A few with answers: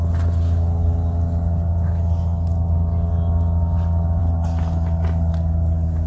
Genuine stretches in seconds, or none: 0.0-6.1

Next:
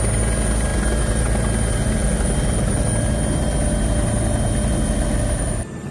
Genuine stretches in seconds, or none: 0.0-5.9

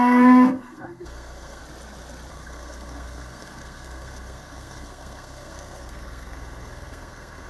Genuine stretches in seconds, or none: 1.6-2.3

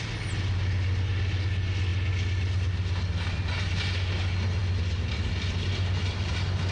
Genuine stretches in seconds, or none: 0.0-6.7

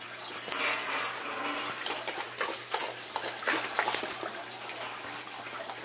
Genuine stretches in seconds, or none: 0.0-5.8

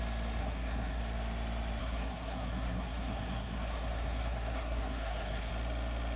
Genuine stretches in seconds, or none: 0.0-0.4; 1.0-1.8; 5.5-6.2